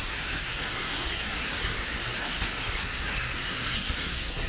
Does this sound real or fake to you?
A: fake